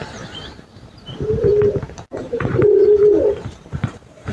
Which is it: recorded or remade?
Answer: remade